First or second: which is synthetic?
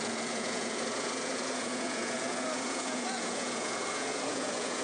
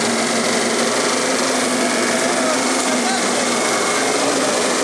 first